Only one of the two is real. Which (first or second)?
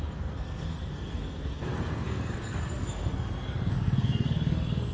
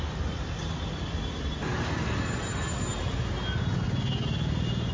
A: second